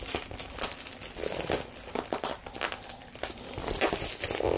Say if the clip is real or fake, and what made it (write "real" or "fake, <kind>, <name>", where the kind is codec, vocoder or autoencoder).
real